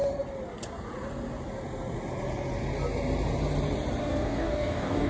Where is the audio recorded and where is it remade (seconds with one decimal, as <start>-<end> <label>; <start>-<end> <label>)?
0.0-4.0 recorded; 4.0-5.1 remade